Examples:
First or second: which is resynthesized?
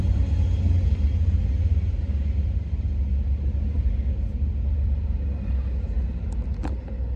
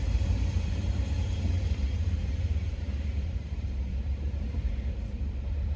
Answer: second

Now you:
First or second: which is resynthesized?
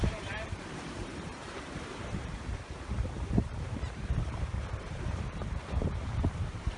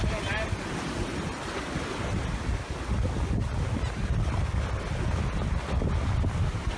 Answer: first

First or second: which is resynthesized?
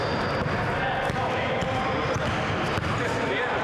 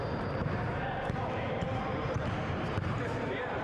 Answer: second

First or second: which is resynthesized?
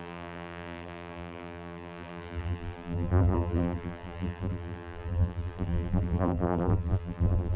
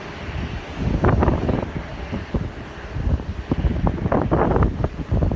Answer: first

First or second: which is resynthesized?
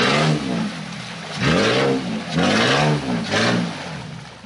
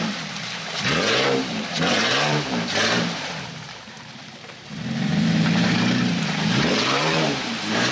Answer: second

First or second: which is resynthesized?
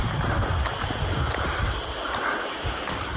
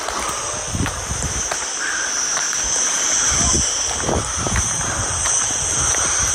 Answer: second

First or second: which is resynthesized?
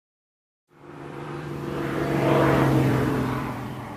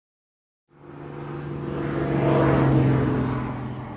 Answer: first